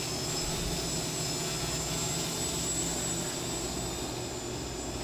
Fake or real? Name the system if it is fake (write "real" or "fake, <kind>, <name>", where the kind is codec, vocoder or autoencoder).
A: real